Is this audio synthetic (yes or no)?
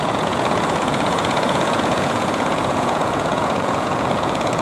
yes